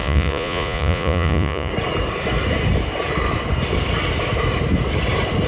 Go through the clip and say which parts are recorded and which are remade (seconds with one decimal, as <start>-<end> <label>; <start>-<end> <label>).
0.0-1.7 remade; 1.7-5.5 recorded